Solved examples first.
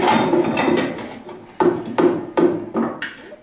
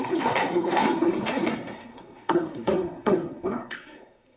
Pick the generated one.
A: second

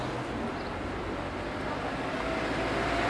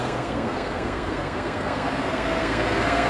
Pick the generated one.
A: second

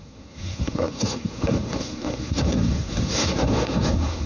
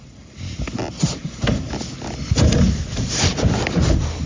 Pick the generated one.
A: first